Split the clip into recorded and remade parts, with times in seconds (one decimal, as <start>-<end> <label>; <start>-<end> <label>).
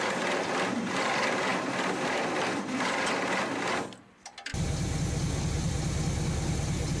0.0-7.0 recorded